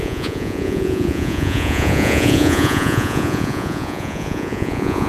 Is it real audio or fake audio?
fake